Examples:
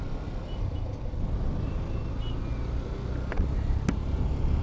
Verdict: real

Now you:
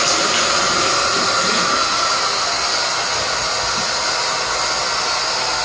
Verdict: real